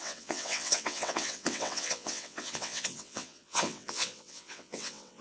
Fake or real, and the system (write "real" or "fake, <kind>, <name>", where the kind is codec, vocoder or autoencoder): fake, vocoder, WaveNeXt